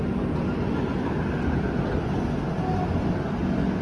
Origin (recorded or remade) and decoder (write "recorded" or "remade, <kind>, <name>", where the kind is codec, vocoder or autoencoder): recorded